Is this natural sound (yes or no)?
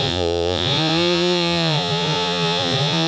no